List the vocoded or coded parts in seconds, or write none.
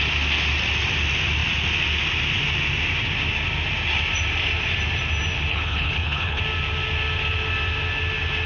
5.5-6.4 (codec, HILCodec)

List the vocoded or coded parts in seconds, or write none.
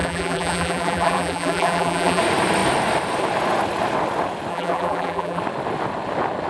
0.0-2.2 (vocoder, BigVGAN v2); 4.5-5.4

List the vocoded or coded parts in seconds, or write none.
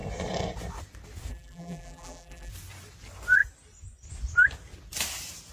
1.3-2.5 (vocoder, BigVGAN v2)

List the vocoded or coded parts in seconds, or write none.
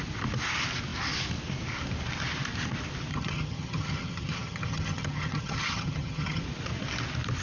3.1-6.4 (vocoder, HiFi-GAN)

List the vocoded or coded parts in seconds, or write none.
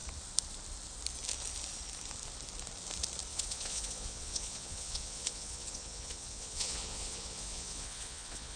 3.3-8.6 (vocoder, Vocos)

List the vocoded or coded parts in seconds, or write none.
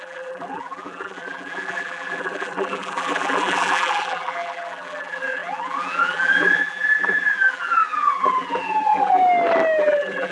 0.0-9.2 (vocoder, BigVGAN v2); 9.8-10.3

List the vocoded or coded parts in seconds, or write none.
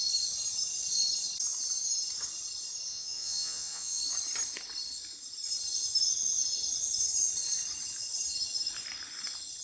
2.9-4.0 (vocoder, Vocos)